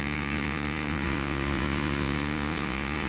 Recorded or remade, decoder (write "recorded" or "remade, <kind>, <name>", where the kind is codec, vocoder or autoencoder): remade, vocoder, Vocos